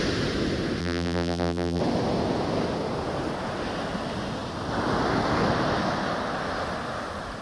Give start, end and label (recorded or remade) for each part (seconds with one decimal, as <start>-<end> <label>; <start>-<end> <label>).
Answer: 0.0-0.8 recorded; 0.8-1.8 remade; 1.8-7.4 recorded